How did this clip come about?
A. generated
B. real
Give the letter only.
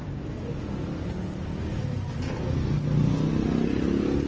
B